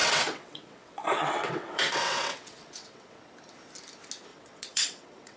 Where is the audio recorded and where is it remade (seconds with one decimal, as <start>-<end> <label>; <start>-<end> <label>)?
0.0-3.2 remade; 3.2-4.3 recorded; 4.3-5.4 remade